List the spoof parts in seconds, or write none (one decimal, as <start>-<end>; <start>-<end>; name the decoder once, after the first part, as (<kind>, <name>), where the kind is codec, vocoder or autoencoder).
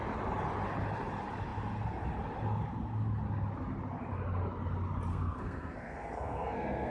5.1-6.9 (codec, SNAC)